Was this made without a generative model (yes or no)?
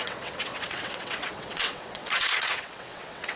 no